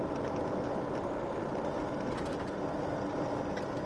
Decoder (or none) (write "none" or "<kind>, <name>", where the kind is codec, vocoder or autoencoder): vocoder, BigVGAN v2